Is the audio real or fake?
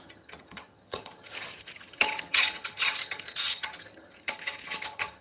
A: fake